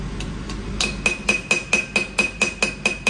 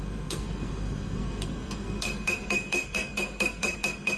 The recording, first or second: first